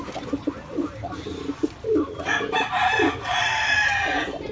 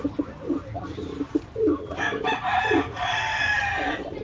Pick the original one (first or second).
second